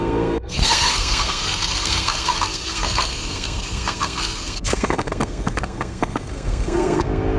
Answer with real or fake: fake